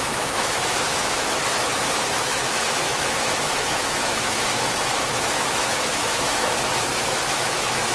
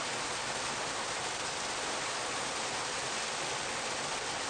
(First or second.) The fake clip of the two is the first